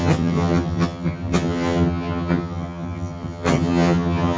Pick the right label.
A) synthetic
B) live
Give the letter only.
A